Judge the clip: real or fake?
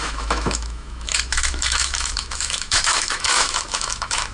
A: fake